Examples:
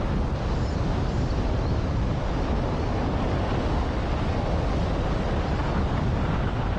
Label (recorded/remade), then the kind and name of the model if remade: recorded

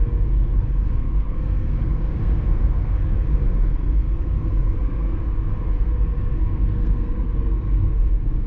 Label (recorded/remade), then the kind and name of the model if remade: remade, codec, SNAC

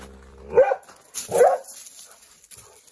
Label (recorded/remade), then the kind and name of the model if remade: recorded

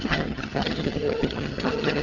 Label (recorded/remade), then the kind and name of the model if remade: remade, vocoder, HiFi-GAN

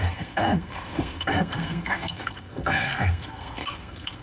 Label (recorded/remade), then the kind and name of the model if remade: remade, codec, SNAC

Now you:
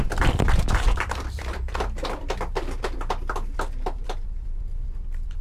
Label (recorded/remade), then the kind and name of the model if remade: remade, vocoder, BigVGAN v2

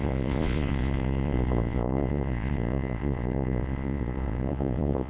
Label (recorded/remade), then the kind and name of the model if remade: remade, vocoder, Vocos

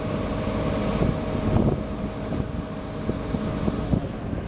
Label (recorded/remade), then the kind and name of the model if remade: recorded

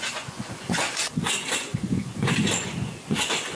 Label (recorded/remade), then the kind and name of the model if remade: remade, vocoder, Vocos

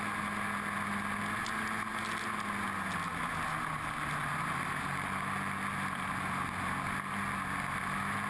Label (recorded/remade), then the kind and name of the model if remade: recorded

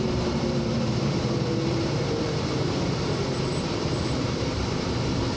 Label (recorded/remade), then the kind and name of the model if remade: remade, vocoder, BigVGAN v2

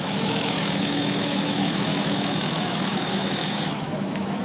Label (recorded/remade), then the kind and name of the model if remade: remade, autoencoder, DAC-VAE